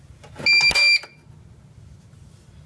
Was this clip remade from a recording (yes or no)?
no